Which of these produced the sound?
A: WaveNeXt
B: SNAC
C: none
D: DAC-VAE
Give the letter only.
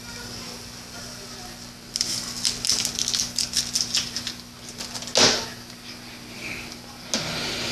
C